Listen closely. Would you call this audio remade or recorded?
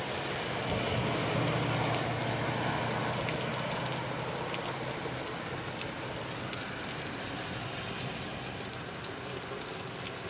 recorded